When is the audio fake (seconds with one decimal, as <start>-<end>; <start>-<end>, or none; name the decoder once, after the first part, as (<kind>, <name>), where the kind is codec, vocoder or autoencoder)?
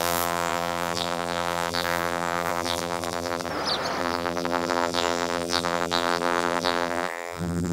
0.0-3.5 (vocoder, BigVGAN v2); 4.0-7.7